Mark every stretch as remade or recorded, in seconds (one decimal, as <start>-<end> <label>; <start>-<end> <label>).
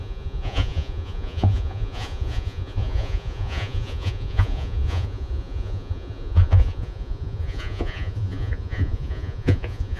0.0-10.0 remade